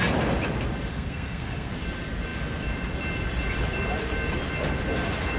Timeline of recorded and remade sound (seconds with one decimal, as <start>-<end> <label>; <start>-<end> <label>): 0.0-0.9 recorded; 0.9-1.7 remade; 1.7-5.4 recorded